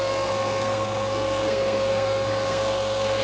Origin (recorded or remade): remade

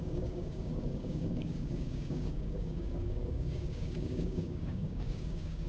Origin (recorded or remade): remade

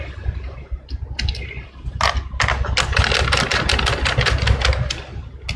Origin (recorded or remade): recorded